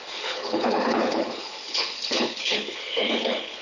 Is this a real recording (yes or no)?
no